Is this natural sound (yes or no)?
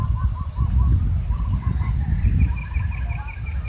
yes